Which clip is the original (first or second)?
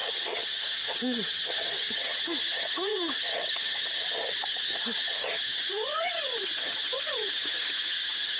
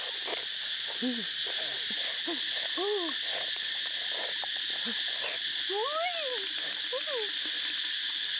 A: second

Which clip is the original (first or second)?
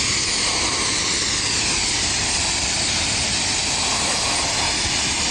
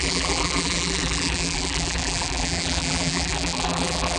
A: first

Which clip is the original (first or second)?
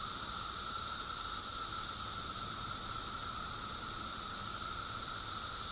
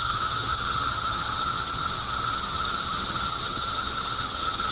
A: first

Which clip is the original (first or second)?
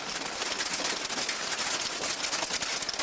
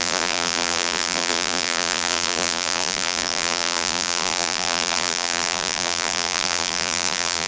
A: first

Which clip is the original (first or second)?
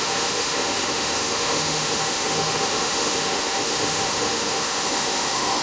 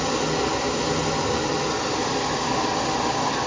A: second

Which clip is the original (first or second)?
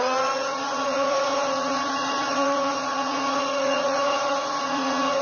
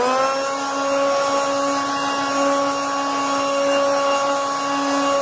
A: second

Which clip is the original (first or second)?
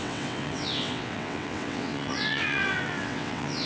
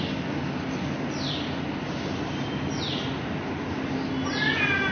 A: second